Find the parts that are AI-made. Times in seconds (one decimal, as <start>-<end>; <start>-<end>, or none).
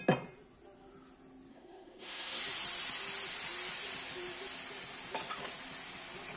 1.5-2.4